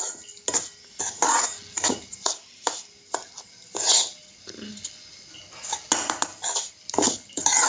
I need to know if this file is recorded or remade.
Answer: recorded